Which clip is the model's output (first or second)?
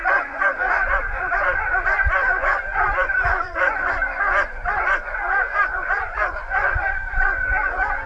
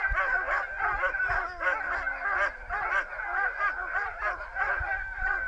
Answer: first